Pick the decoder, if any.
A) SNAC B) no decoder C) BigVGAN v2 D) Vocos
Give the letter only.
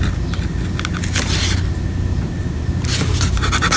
B